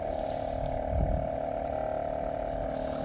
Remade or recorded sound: recorded